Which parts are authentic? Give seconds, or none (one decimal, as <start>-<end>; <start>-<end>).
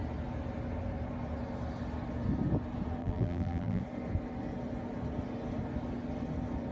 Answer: 0.0-3.0; 3.8-6.7